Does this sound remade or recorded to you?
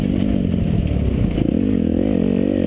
recorded